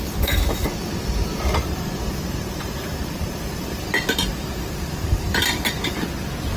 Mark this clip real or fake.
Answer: real